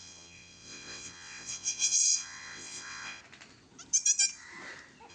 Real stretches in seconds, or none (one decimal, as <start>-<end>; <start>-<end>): 3.2-5.1